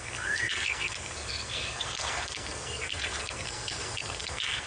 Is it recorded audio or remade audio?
remade